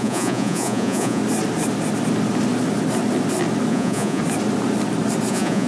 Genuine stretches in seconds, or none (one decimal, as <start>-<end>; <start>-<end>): 1.2-3.7; 4.2-5.3